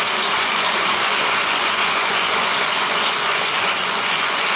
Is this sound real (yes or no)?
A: no